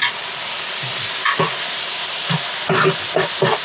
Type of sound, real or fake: real